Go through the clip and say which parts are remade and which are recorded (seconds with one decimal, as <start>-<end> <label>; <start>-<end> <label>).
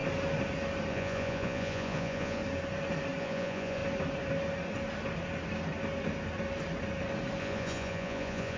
0.0-0.9 recorded; 0.9-2.4 remade; 2.4-3.2 recorded; 3.2-3.8 remade; 3.8-7.4 recorded; 7.4-8.6 remade